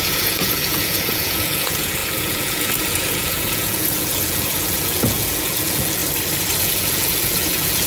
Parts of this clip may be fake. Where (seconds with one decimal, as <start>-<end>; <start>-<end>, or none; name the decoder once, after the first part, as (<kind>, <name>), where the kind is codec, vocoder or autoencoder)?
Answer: 0.0-6.0 (vocoder, Vocos); 6.6-7.9